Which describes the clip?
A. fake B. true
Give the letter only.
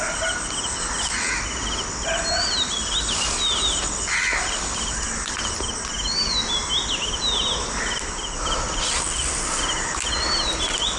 B